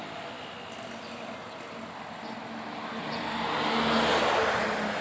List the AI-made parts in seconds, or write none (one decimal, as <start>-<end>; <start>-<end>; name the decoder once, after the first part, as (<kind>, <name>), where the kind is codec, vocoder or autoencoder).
none